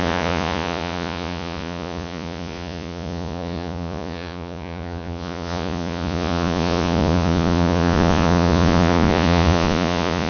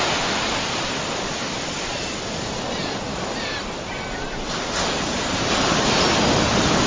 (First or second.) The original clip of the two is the second